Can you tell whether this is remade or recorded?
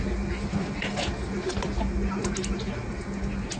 recorded